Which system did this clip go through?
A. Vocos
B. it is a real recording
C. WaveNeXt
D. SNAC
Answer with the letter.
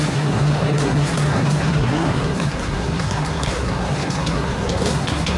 D